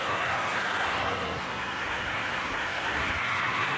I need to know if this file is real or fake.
fake